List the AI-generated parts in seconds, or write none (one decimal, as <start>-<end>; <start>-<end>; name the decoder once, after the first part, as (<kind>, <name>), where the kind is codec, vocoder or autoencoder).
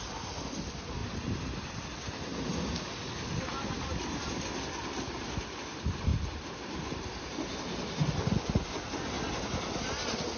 none